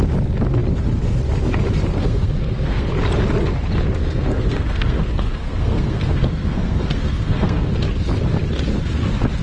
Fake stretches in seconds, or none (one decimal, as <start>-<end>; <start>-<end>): 2.0-2.9; 4.0-7.7

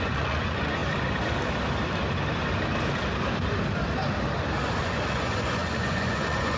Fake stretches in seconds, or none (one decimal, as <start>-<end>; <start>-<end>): 0.0-0.8; 4.8-6.6

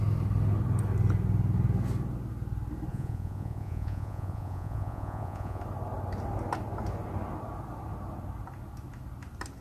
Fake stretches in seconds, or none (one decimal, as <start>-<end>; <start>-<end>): 2.9-5.6

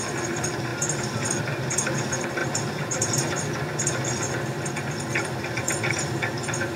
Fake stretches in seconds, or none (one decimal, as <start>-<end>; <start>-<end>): 2.4-3.4